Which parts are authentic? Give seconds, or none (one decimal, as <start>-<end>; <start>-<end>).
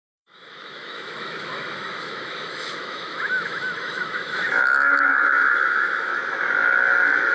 6.1-7.3